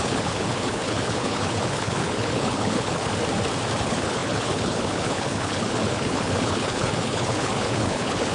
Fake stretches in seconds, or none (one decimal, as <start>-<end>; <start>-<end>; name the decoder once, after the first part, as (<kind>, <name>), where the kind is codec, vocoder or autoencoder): 0.0-3.1 (codec, HILCodec); 3.8-8.3